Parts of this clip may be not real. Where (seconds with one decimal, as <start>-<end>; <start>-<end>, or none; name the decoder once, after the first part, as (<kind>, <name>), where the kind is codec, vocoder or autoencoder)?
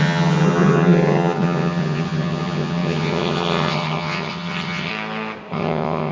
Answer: 0.0-4.9 (vocoder, HiFi-GAN); 5.5-6.1